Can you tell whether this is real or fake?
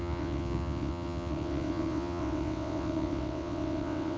fake